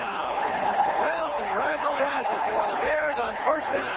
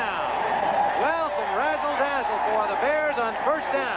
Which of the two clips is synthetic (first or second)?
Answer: first